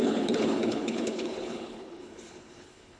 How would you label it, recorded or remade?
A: remade